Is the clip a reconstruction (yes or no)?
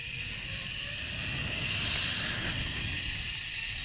no